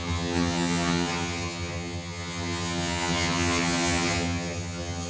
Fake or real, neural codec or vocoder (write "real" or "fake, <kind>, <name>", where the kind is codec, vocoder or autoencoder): fake, vocoder, HiFi-GAN